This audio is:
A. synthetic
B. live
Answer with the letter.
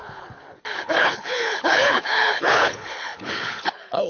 A